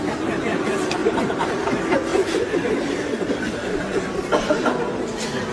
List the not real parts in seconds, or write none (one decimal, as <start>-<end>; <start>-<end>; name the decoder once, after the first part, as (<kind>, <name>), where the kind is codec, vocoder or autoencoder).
1.0-1.5 (vocoder, BigVGAN v2)